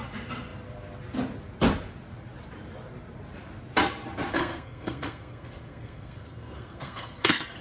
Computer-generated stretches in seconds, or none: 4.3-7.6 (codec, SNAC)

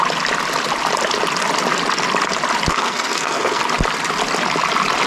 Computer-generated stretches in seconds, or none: 2.7-3.6 (codec, SNAC)